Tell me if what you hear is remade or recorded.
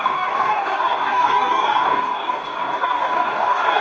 remade